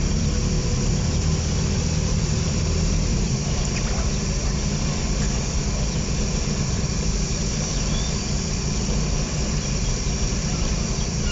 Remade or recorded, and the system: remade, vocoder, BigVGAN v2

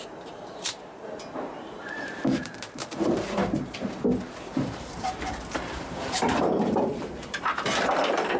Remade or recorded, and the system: remade, vocoder, BigVGAN v2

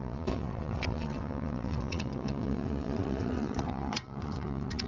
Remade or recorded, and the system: remade, vocoder, WaveNeXt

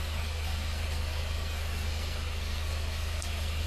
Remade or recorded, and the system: remade, codec, SNAC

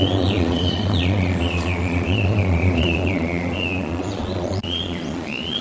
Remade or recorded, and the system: remade, vocoder, Vocos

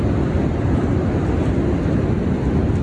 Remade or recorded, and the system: recorded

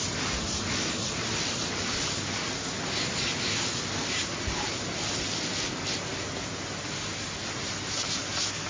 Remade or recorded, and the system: recorded